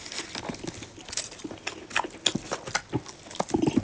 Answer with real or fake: real